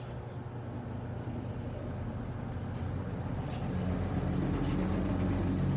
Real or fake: real